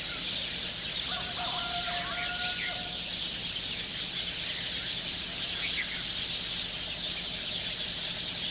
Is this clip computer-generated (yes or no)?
no